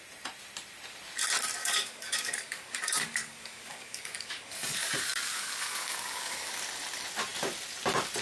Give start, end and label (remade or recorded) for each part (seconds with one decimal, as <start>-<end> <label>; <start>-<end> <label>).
0.0-1.6 recorded; 1.6-6.5 remade; 6.5-8.2 recorded